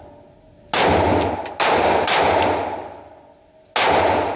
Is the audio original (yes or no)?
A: yes